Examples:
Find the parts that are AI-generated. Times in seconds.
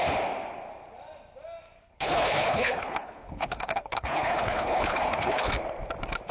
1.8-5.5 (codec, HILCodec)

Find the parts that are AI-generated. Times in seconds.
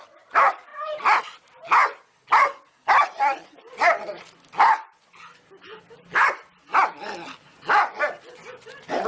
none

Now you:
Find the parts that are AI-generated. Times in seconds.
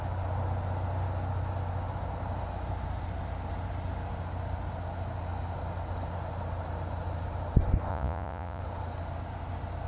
7.9-8.6 (vocoder, Vocos)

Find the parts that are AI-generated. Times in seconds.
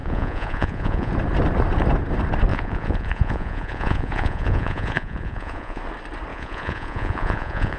0.0-1.1 (vocoder, Vocos); 2.5-5.8; 6.3-7.8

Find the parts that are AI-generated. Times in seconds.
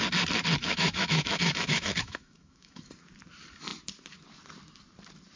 0.6-2.9 (autoencoder, DAC-VAE)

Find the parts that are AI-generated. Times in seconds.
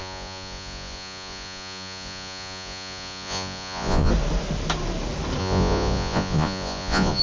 0.0-4.1 (vocoder, Vocos); 5.4-7.2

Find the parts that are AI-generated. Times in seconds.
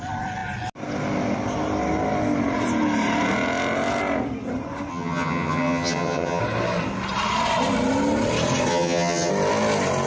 4.9-6.4 (vocoder, HiFi-GAN); 8.7-9.3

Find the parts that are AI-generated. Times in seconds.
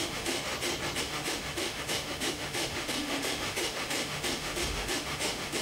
0.0-0.5 (autoencoder, DAC-VAE); 1.0-5.6